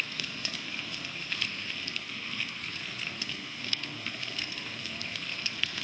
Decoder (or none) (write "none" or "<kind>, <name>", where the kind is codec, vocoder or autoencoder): codec, SNAC